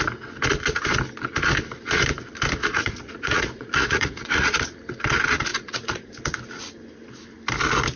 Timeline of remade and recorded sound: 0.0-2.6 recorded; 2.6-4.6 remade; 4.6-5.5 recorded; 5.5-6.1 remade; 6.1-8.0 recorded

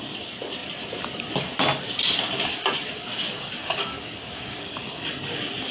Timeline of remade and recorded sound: 0.0-3.1 recorded; 3.1-5.1 remade; 5.1-5.7 recorded

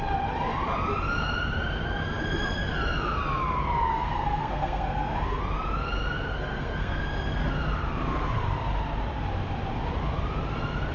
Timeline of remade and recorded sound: 0.0-3.9 recorded; 3.9-5.4 remade; 5.4-6.3 recorded; 6.3-7.0 remade; 7.0-10.9 recorded

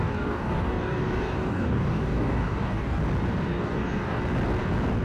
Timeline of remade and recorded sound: 0.0-3.0 remade; 3.0-3.5 recorded; 3.5-4.2 remade; 4.2-5.0 recorded

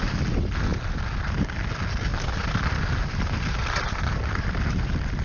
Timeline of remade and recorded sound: 0.0-2.1 remade; 2.1-3.0 recorded; 3.0-5.2 remade